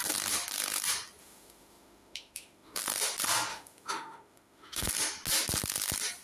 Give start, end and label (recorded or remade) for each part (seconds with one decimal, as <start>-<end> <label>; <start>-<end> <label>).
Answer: 0.0-1.2 recorded; 1.2-2.8 remade; 2.8-3.5 recorded; 3.5-4.9 remade; 4.9-6.2 recorded